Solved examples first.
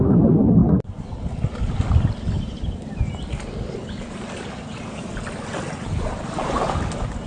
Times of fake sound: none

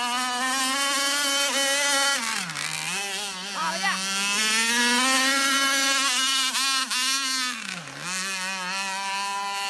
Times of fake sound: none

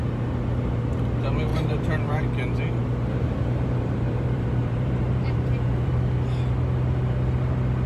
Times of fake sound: 1.5-2.3; 2.8-5.9